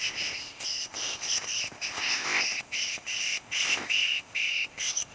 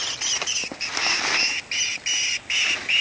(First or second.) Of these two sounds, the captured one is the second